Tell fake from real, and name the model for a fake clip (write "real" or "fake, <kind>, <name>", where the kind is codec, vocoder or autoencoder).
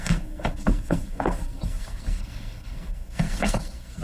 fake, codec, SNAC